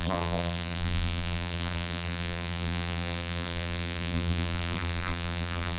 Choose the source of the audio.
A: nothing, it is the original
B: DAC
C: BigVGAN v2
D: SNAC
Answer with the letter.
C